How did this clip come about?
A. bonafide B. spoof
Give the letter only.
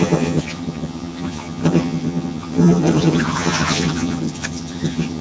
B